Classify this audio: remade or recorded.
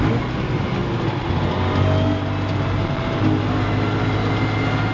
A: recorded